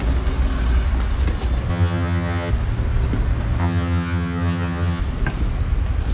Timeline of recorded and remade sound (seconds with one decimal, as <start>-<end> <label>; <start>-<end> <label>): 0.0-1.7 recorded; 1.7-2.5 remade; 2.5-3.6 recorded; 3.6-5.0 remade; 5.0-6.1 recorded